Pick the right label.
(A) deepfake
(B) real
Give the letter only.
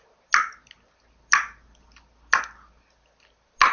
B